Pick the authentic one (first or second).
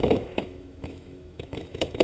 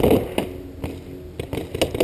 second